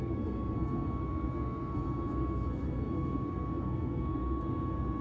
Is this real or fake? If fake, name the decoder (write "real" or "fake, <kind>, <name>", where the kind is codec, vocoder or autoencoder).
fake, codec, SNAC